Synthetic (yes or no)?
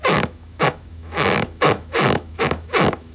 yes